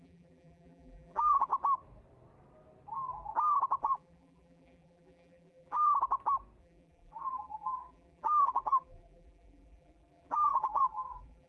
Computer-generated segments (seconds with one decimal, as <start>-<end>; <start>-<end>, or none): 0.0-1.5; 3.8-5.9; 6.6-11.5

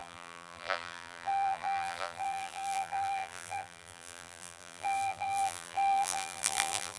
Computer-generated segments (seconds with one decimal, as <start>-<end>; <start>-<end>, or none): 0.0-7.0

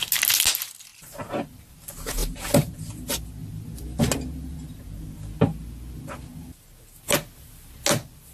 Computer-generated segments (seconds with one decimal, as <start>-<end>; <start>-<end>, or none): 2.2-2.7

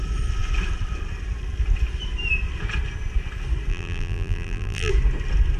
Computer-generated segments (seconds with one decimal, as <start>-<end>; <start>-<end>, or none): 3.7-4.9